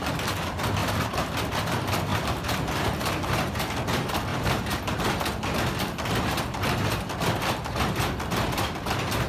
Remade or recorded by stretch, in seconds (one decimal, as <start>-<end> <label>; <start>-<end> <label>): 0.0-0.8 recorded; 0.8-1.4 remade; 1.4-2.1 recorded; 2.1-3.7 remade; 3.7-4.3 recorded; 4.3-4.8 remade; 4.8-9.3 recorded